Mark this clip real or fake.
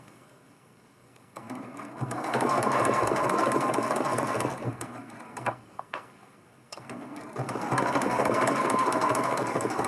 fake